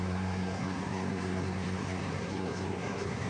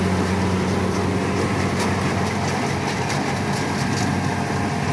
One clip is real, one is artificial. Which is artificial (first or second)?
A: first